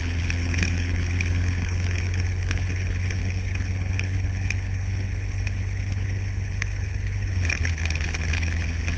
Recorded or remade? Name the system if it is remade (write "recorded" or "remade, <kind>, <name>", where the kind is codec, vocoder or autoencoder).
remade, codec, HILCodec